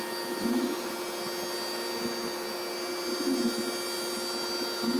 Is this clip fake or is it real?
real